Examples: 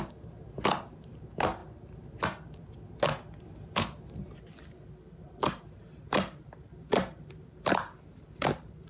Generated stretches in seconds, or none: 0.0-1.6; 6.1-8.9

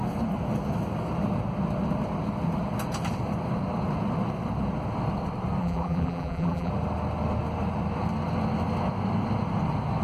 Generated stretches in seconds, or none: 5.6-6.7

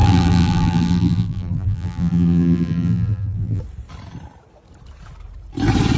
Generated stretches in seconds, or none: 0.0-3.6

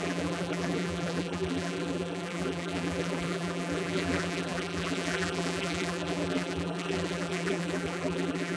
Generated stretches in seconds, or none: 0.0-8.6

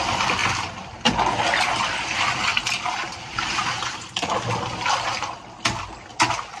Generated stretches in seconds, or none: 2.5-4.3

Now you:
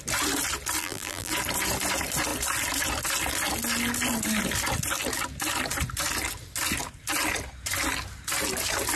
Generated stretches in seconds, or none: 0.8-1.3

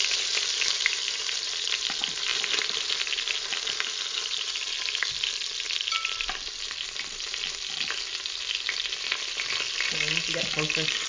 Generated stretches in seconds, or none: none

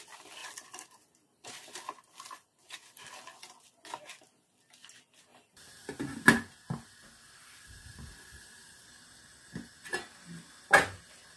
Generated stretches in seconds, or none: 0.4-3.2; 5.3-5.9; 7.4-8.4